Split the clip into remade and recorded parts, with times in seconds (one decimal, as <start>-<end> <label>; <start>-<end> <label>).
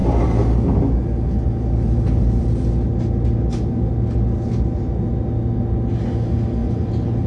0.0-7.3 recorded